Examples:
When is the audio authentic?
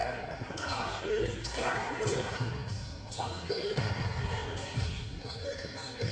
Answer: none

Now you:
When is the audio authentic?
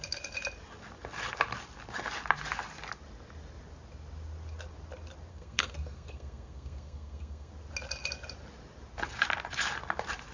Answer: 0.0-5.3; 7.5-10.3